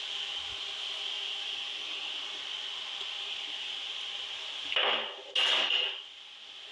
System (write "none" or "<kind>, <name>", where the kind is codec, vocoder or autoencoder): none